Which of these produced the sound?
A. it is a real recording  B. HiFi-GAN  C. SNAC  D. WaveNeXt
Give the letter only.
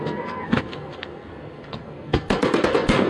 C